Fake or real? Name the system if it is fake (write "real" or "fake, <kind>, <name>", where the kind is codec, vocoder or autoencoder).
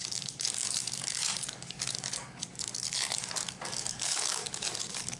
fake, codec, DAC